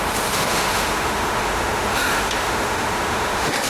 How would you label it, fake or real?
fake